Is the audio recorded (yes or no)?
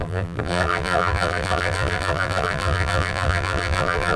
no